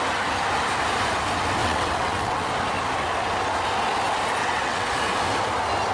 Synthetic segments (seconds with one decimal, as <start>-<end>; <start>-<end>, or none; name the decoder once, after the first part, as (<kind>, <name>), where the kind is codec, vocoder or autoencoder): 1.6-2.5 (vocoder, WaveNeXt); 4.4-4.9